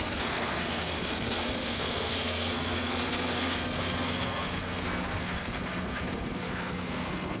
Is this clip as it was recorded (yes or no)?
no